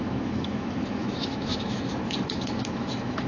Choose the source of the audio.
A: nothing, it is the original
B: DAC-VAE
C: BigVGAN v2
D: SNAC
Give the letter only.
B